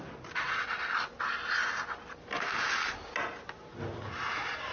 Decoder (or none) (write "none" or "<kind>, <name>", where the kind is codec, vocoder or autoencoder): none